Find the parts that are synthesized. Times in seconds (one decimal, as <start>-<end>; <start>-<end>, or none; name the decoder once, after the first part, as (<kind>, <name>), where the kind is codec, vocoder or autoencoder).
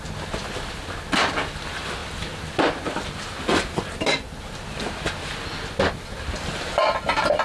none